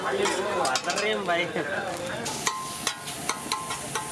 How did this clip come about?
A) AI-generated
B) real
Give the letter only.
B